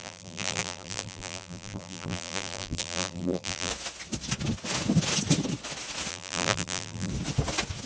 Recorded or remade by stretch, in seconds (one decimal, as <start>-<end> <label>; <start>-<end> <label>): 0.0-3.7 remade; 3.7-6.1 recorded; 6.1-7.1 remade; 7.1-7.9 recorded